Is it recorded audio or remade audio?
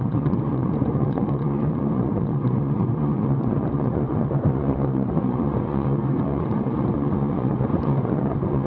remade